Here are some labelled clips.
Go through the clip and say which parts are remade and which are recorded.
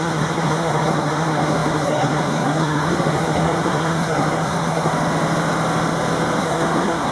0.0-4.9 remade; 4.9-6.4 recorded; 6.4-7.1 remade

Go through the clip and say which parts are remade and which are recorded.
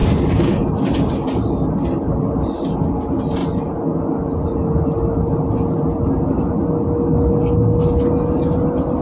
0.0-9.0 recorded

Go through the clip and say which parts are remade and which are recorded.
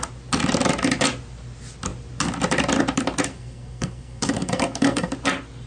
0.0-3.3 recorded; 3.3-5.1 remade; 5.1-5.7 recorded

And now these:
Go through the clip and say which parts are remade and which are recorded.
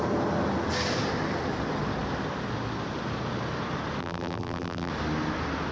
0.0-4.0 recorded; 4.0-4.9 remade; 4.9-5.7 recorded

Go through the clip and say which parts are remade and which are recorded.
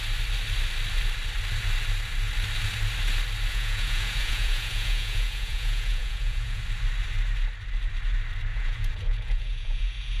0.0-3.5 recorded; 3.5-6.6 remade; 6.6-8.5 recorded; 8.5-10.2 remade